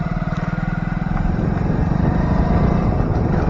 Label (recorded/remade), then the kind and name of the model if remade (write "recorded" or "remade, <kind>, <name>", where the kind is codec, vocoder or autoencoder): recorded